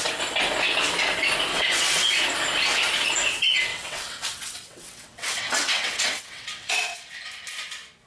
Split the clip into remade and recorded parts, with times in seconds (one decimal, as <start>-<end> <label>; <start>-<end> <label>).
0.0-1.5 recorded; 1.5-2.1 remade; 2.1-3.7 recorded; 3.7-7.1 remade; 7.1-8.1 recorded